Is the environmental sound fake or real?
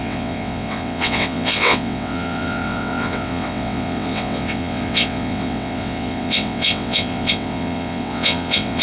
fake